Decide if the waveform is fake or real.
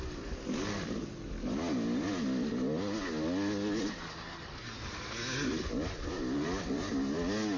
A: real